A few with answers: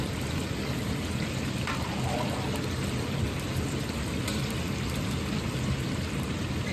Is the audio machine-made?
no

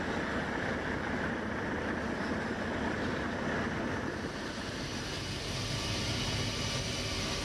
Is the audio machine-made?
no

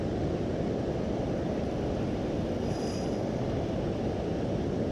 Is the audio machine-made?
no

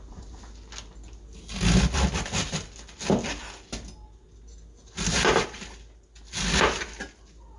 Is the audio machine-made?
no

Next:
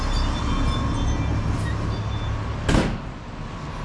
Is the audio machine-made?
no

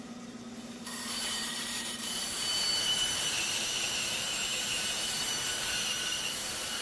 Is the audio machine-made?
yes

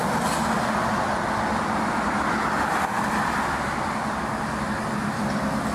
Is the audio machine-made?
no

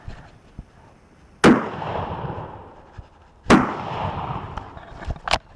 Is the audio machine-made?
no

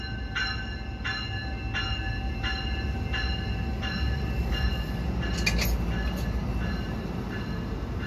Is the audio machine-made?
no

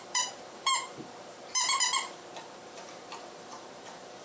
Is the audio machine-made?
yes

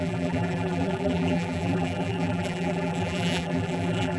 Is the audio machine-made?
yes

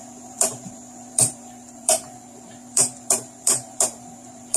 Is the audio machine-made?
yes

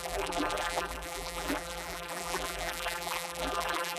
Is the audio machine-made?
yes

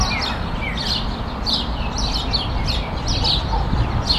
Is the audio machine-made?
no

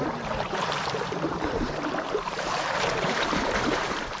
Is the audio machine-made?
yes